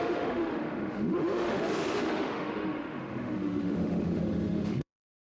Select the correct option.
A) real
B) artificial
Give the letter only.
B